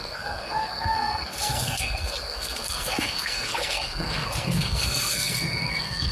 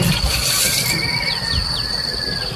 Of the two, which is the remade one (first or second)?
first